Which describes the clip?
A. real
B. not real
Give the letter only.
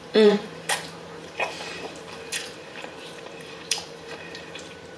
B